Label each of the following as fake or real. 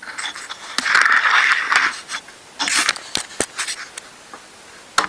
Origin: real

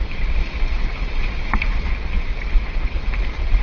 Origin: fake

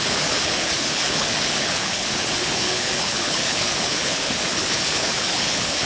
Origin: fake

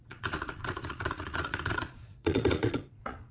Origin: fake